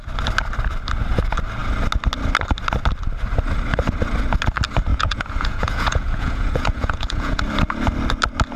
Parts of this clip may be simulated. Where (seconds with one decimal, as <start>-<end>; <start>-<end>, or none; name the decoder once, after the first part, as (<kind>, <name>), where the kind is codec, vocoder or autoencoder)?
4.9-7.4 (vocoder, Vocos)